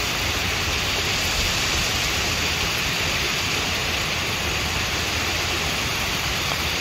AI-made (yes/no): no